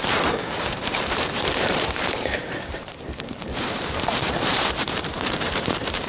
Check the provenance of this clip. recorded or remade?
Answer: remade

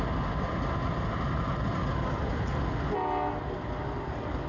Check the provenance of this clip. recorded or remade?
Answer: recorded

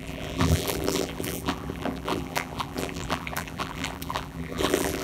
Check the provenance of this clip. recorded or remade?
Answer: remade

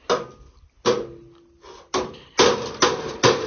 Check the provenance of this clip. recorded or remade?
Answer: recorded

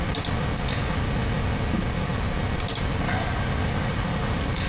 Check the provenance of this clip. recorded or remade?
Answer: recorded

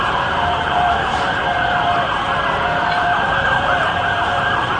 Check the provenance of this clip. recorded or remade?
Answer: remade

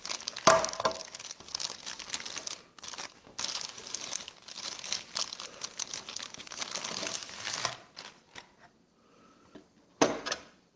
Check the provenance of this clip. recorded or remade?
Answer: recorded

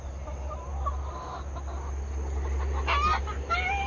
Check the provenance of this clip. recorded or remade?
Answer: recorded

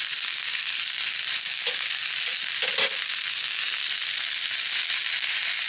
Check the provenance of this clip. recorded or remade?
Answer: recorded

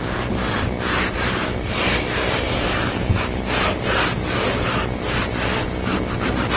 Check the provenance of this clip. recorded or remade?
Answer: recorded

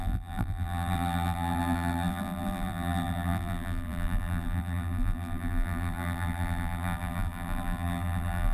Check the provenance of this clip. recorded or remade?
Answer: remade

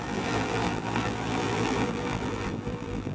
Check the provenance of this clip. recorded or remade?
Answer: remade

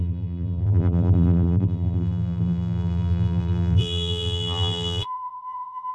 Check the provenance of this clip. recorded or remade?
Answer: remade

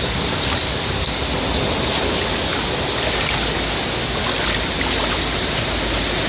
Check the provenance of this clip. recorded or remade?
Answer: recorded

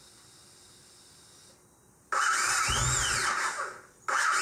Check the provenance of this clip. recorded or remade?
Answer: recorded